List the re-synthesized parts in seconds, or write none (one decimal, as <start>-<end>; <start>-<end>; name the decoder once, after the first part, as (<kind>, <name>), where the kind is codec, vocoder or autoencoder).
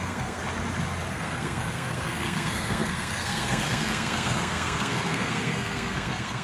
0.0-0.4 (codec, SNAC); 1.1-6.4